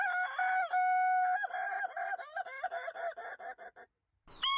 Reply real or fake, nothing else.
real